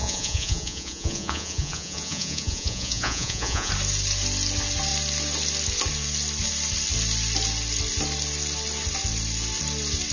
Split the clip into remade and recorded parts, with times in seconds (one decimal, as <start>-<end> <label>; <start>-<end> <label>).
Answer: 0.0-3.7 remade; 3.7-10.1 recorded